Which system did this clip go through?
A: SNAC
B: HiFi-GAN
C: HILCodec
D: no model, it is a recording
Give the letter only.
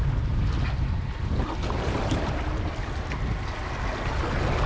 D